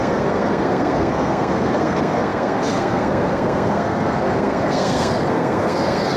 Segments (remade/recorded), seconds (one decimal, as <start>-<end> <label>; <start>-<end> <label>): 0.0-6.2 remade